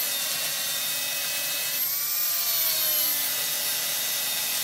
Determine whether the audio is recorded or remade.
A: recorded